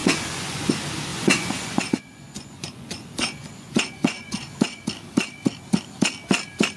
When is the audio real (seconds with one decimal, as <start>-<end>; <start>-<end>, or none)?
0.7-1.1; 4.8-6.8